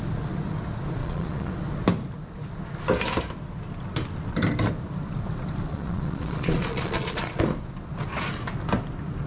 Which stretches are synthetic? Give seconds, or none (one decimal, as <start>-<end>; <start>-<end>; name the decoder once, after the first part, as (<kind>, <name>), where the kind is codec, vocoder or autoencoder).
1.0-1.5 (vocoder, Vocos); 5.7-7.4